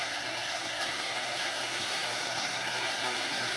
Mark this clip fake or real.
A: fake